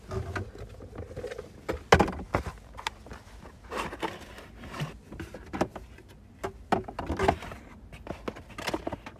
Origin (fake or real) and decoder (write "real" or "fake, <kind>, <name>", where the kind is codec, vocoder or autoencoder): real